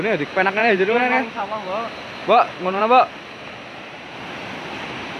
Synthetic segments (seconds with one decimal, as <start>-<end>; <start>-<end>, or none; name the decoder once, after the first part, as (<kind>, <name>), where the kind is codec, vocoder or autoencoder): 0.6-1.4 (vocoder, BigVGAN v2); 2.2-2.8